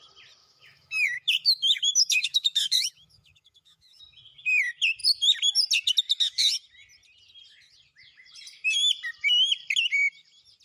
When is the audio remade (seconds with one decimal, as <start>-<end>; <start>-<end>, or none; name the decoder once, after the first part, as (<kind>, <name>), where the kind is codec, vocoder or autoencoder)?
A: 0.4-4.0 (autoencoder, DAC-VAE)